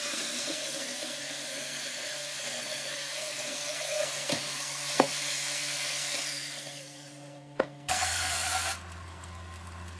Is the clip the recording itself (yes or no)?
no